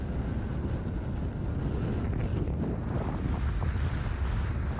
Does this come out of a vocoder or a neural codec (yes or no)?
no